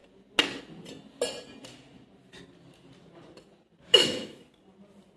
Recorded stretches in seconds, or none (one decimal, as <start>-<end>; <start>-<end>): 0.0-3.9; 4.4-5.2